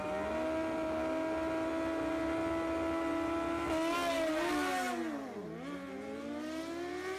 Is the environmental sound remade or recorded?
recorded